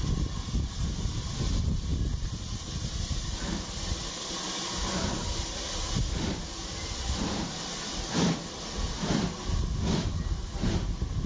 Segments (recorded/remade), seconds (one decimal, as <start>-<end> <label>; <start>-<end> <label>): 0.0-11.3 remade

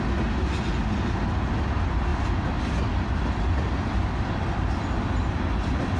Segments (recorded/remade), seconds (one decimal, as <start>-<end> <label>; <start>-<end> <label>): 0.0-6.0 recorded

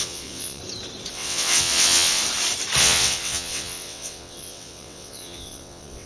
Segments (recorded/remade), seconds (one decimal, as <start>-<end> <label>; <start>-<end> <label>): 0.0-0.6 remade; 0.6-1.1 recorded; 1.1-2.2 remade; 2.2-2.8 recorded; 2.8-6.1 remade

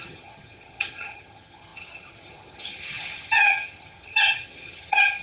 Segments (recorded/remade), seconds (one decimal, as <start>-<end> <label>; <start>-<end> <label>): 0.0-5.2 remade

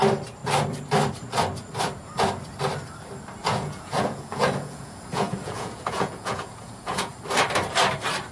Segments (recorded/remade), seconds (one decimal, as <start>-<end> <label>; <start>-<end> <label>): 0.0-3.4 recorded; 3.4-7.1 remade; 7.1-8.3 recorded